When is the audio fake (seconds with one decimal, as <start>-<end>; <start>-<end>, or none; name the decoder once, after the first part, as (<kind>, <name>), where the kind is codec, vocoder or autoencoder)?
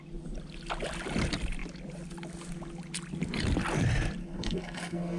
4.2-5.2 (codec, SNAC)